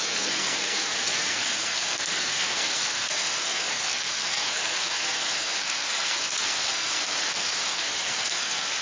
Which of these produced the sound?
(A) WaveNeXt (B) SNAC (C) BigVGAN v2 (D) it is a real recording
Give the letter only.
B